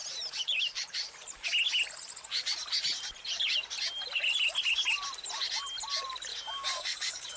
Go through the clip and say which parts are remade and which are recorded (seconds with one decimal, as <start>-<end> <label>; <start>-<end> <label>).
0.0-6.3 recorded; 6.3-7.4 remade